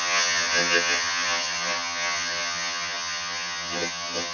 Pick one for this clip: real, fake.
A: fake